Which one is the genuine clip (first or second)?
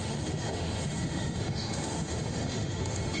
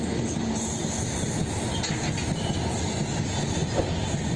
second